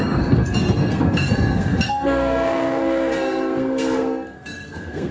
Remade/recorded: remade